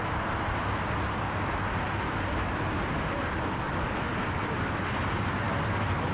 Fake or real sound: real